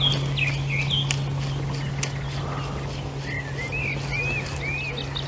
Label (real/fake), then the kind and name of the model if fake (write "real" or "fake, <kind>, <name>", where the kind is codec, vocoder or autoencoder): real